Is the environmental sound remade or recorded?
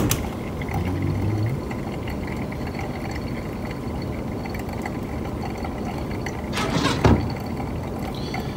recorded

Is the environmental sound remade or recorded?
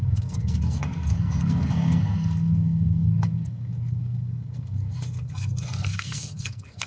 remade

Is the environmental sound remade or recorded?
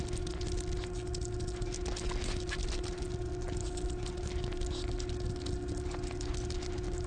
recorded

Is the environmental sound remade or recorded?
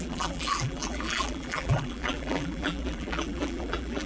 remade